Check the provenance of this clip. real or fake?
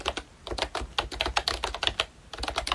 real